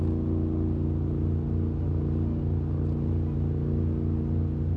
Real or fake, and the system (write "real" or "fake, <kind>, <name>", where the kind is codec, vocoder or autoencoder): real